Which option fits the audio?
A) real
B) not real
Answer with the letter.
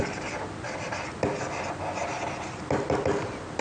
A